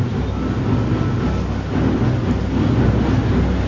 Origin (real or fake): real